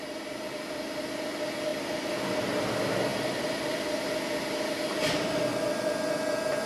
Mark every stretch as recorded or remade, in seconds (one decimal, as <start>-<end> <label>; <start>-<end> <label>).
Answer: 0.0-1.7 recorded; 1.7-2.7 remade; 2.7-3.1 recorded; 3.1-4.1 remade; 4.1-5.5 recorded; 5.5-6.3 remade; 6.3-6.7 recorded